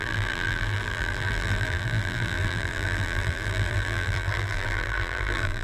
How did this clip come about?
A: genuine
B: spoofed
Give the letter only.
B